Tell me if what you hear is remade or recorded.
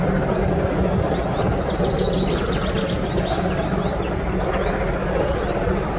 recorded